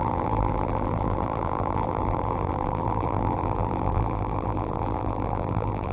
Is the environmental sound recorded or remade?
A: remade